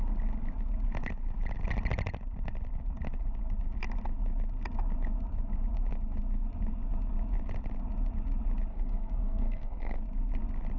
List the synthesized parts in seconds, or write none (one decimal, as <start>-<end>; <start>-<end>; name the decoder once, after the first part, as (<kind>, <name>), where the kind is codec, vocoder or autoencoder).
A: 8.7-10.0 (codec, SNAC)